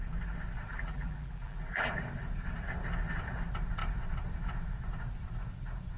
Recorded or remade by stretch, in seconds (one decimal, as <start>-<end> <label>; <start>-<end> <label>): 0.0-0.7 recorded; 0.7-1.9 remade; 1.9-6.0 recorded